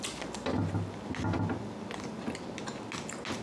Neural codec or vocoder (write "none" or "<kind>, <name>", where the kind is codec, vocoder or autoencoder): none